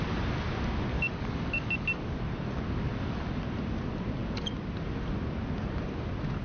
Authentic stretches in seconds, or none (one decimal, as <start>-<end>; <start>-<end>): 0.0-0.9; 2.2-6.4